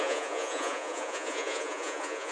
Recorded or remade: remade